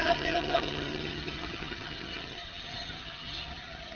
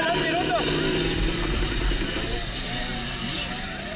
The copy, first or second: first